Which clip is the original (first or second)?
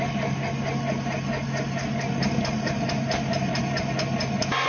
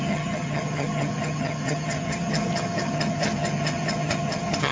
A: first